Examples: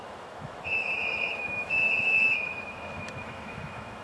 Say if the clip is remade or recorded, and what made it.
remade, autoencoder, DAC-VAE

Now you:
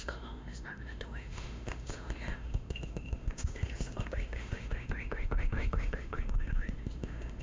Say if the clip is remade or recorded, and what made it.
remade, autoencoder, DAC-VAE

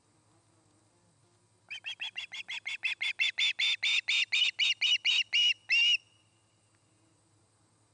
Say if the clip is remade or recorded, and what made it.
recorded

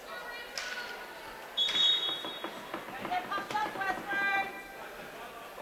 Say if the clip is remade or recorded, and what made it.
recorded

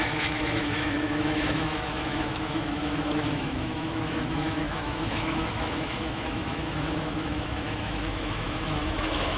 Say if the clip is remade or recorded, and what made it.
remade, autoencoder, DAC-VAE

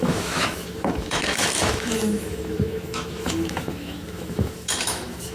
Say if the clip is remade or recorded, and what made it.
remade, autoencoder, DAC-VAE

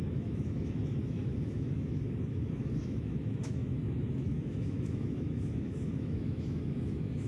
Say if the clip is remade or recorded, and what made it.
remade, autoencoder, DAC-VAE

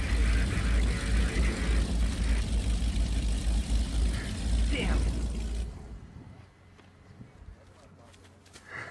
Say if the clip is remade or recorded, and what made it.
recorded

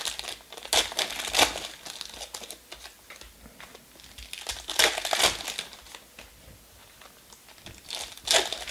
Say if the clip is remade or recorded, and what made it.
recorded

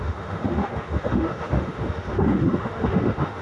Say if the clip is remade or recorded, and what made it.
remade, autoencoder, DAC-VAE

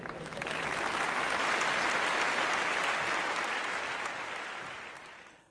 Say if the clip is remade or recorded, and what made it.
recorded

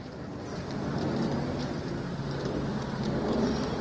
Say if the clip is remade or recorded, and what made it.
recorded